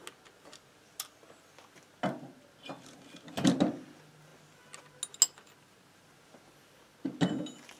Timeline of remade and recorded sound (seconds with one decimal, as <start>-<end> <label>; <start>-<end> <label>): 0.0-7.8 recorded